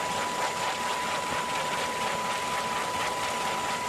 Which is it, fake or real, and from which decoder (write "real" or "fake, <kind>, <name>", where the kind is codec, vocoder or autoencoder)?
real